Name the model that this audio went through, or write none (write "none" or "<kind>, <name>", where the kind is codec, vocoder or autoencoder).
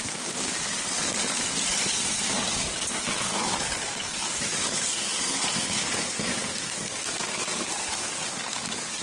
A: codec, DAC